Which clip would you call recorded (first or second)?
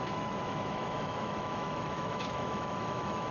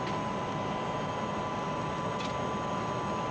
second